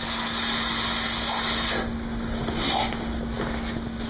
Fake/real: real